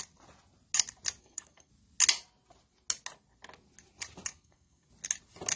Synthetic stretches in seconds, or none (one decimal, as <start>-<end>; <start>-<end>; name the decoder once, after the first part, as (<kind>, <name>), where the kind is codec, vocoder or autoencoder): 1.2-1.7 (codec, SNAC); 4.3-4.9